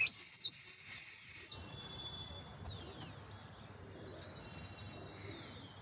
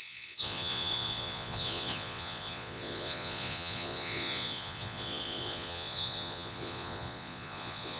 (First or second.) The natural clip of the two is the first